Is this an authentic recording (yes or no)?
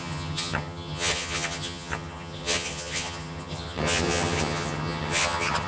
no